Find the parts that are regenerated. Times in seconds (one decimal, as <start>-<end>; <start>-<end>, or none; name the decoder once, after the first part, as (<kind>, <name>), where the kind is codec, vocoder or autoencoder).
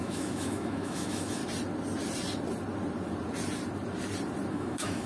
0.0-1.4 (autoencoder, DAC-VAE); 4.5-5.1